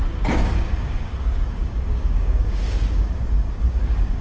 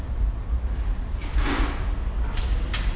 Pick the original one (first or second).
second